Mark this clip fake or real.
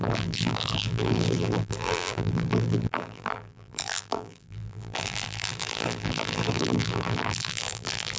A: fake